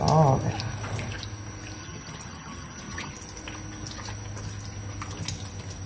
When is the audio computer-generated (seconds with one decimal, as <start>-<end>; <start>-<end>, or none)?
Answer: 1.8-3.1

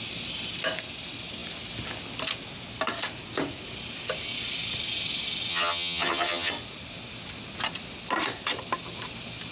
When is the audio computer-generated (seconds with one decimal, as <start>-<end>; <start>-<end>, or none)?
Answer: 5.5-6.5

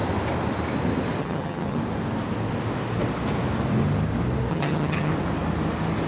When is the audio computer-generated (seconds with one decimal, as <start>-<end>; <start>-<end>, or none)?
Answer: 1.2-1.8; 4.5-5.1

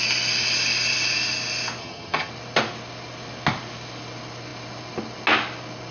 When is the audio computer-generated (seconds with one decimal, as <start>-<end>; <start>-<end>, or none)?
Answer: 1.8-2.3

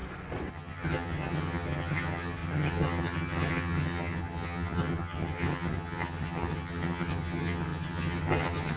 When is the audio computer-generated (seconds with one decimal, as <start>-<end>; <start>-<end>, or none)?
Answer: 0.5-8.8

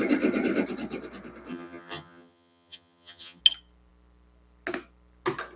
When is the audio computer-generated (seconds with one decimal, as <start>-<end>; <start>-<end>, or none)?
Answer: 1.5-3.4

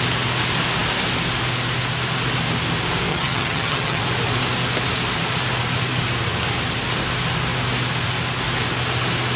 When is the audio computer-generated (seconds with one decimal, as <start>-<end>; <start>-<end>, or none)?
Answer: 3.1-4.0